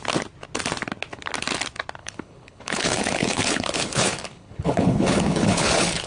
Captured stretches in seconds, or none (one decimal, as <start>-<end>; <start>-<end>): 0.0-2.0